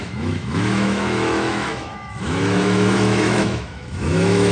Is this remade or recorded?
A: remade